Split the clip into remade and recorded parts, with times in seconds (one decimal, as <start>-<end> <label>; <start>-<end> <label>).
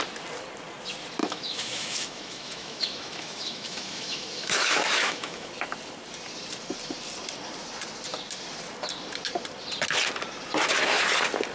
0.0-1.2 recorded; 1.2-5.5 remade; 5.5-11.5 recorded